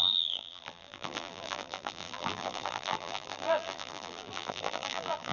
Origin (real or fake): fake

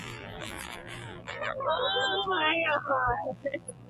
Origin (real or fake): fake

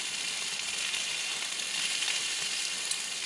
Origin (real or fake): real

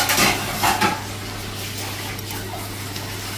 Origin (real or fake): real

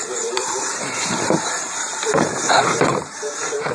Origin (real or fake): fake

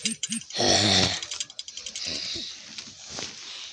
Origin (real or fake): fake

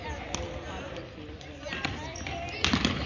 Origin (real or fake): real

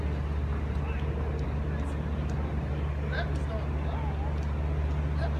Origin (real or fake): real